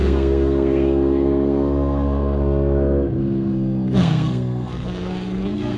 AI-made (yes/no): yes